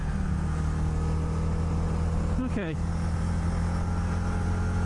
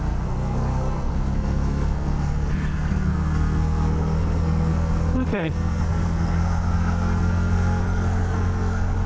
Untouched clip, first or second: first